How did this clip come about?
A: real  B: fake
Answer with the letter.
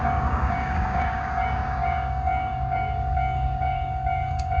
B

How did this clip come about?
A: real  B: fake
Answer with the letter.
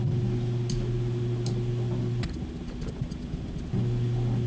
A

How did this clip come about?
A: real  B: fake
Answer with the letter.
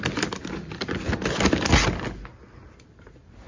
A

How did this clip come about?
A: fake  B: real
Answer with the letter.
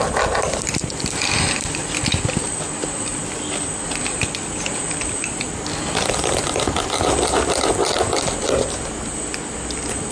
B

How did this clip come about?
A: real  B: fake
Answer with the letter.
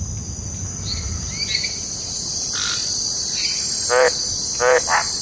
A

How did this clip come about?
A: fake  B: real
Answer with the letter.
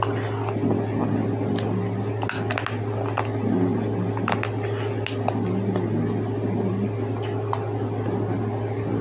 B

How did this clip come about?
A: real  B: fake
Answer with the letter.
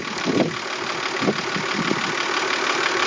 A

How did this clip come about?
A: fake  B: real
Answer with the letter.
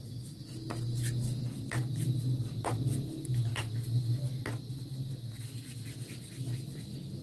B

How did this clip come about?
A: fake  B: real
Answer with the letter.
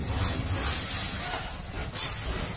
B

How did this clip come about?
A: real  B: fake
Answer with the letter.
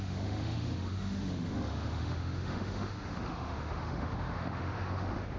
B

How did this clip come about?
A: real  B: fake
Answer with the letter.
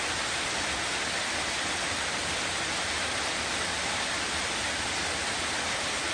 A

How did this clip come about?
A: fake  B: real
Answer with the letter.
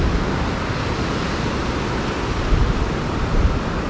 B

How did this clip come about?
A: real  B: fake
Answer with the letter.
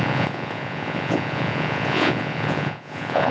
B